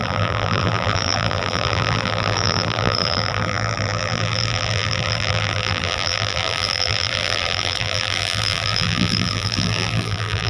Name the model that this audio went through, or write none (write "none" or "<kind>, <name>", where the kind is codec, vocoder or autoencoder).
vocoder, BigVGAN v2